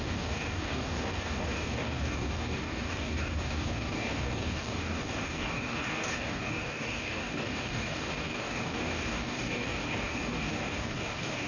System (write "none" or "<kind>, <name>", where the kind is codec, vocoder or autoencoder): codec, DAC